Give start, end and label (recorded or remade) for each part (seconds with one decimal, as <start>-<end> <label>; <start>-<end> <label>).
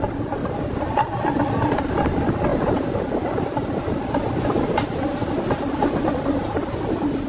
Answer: 0.0-2.5 recorded; 2.5-3.1 remade; 3.1-7.3 recorded